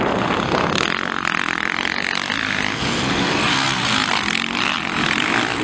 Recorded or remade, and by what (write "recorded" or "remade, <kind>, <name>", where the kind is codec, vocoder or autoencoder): recorded